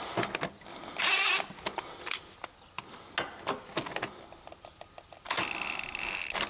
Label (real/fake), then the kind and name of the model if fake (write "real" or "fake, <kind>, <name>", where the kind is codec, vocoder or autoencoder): real